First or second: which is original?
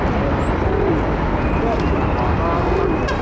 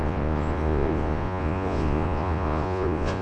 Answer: first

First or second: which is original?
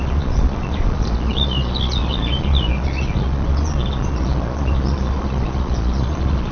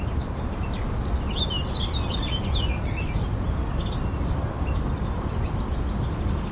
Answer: second